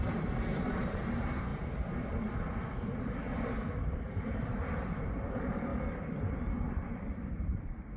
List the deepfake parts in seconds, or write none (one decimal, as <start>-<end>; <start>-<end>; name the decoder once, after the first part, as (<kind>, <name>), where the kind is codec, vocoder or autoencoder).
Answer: 0.0-5.7 (vocoder, BigVGAN v2); 6.7-8.0